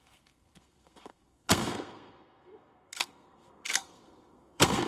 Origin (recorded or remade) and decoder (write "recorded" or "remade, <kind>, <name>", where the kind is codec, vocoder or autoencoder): remade, codec, SNAC